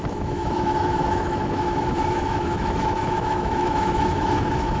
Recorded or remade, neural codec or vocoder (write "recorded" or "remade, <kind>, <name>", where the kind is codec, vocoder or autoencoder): remade, autoencoder, DAC-VAE